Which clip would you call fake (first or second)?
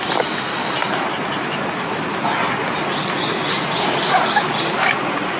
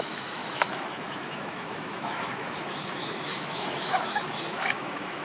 second